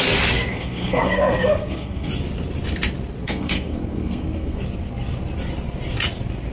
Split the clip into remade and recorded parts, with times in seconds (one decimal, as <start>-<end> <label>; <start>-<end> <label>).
0.0-0.5 recorded; 0.5-2.1 remade; 2.1-3.2 recorded; 3.2-4.6 remade; 4.6-6.5 recorded